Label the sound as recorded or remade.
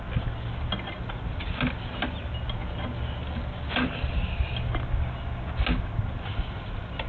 recorded